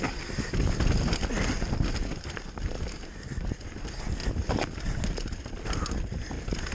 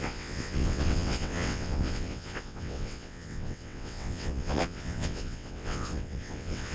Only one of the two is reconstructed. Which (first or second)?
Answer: second